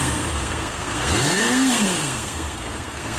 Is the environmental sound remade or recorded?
remade